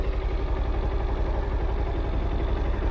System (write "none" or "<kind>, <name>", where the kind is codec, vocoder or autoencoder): none